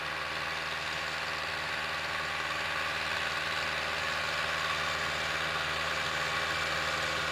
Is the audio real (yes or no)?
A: yes